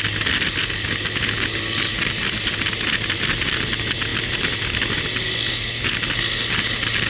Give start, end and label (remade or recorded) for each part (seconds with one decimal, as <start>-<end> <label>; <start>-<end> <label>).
0.0-7.1 recorded